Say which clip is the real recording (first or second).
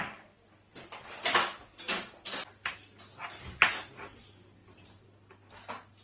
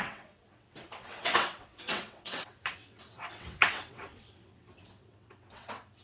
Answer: first